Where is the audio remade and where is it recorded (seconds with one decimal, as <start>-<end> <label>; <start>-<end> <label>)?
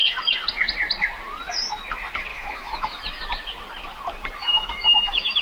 0.0-2.3 recorded; 2.3-3.0 remade; 3.0-4.4 recorded; 4.4-5.4 remade